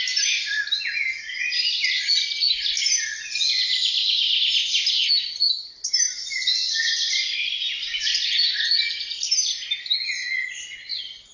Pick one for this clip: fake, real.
real